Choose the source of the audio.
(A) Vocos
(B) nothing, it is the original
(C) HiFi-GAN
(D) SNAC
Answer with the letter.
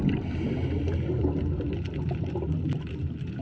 B